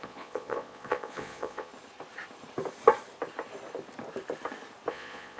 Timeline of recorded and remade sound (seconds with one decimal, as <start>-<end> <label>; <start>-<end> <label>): 0.0-1.7 remade; 1.7-4.9 recorded; 4.9-5.4 remade